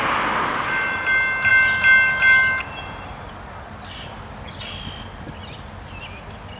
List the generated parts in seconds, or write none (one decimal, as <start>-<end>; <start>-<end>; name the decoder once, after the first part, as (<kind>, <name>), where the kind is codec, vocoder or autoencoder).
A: none